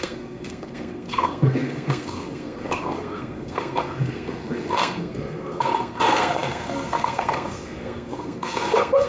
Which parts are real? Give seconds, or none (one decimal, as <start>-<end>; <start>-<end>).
none